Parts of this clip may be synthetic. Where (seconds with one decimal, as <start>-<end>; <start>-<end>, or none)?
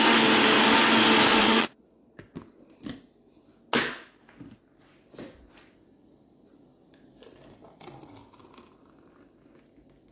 1.3-2.2